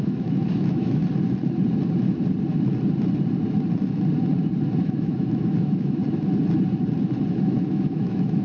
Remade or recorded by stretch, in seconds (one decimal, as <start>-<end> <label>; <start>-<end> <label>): 0.0-1.0 remade; 1.0-4.8 recorded; 4.8-6.0 remade; 6.0-7.3 recorded; 7.3-8.4 remade